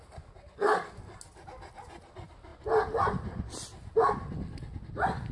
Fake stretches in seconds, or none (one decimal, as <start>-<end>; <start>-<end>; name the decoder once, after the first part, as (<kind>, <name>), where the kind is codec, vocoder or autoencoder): none